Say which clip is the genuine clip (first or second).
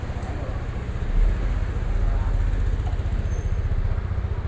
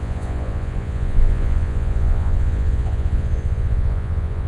first